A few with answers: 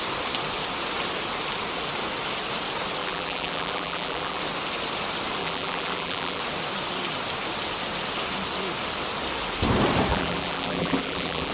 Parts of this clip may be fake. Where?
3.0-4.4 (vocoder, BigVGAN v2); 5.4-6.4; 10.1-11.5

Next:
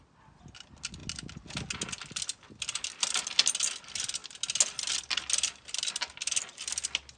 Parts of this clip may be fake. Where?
none

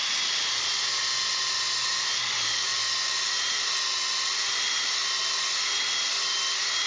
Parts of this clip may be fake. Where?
none

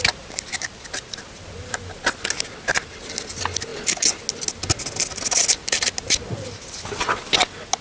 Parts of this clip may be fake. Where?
none

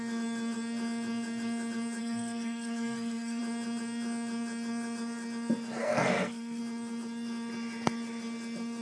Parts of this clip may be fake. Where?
2.0-3.4 (codec, SNAC); 5.8-6.6

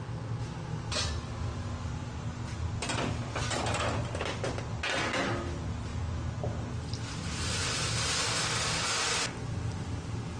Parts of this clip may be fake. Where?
none

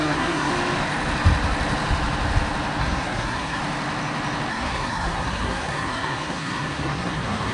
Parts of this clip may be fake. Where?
0.0-0.5 (codec, SNAC); 2.8-3.6; 4.5-7.5

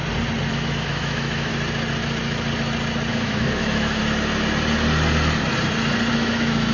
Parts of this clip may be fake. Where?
0.5-1.5 (autoencoder, DAC-VAE); 3.1-4.0; 6.1-6.7